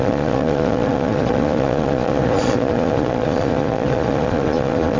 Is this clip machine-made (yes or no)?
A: yes